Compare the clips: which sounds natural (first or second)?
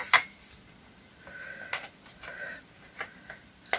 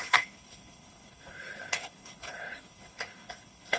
first